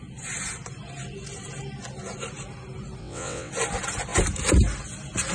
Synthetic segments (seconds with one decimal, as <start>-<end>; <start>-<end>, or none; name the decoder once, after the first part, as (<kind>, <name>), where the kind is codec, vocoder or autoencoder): 3.0-3.5 (vocoder, WaveNeXt)